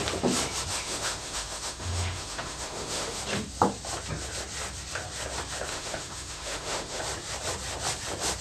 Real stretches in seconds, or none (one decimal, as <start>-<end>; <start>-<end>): 0.0-0.7; 3.2-5.7; 7.0-8.4